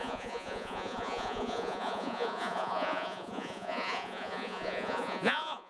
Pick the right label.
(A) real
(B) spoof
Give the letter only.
B